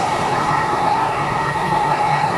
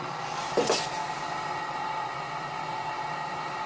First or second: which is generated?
first